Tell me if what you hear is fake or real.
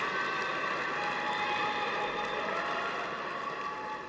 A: fake